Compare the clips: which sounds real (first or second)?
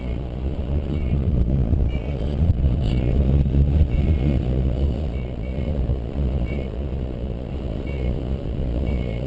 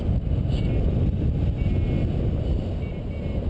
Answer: second